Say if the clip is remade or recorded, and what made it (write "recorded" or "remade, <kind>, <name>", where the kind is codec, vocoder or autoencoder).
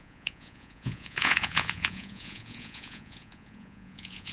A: remade, vocoder, Vocos